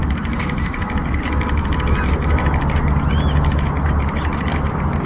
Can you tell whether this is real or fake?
real